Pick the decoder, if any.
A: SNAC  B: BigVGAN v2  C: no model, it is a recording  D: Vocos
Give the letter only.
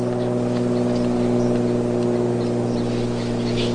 C